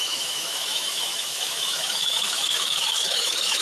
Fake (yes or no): yes